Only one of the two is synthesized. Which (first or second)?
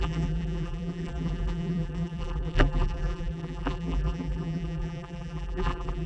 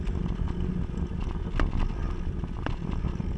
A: first